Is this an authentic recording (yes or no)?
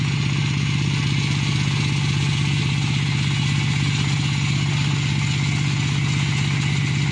yes